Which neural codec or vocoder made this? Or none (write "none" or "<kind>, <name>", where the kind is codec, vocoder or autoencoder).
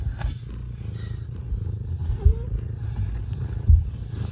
none